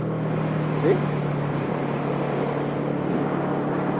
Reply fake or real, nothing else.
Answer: real